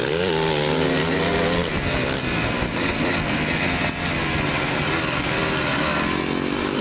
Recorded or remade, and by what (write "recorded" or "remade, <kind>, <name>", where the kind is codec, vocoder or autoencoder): recorded